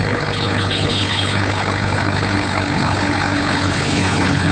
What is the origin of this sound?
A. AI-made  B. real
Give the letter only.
A